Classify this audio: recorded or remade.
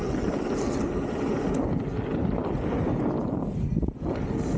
recorded